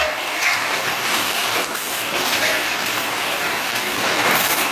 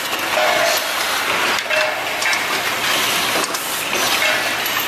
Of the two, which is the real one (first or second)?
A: second